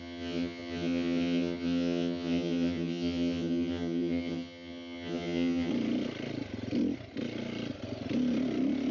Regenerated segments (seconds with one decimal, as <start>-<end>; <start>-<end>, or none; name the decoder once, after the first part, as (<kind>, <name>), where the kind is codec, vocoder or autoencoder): 0.0-5.7 (vocoder, HiFi-GAN)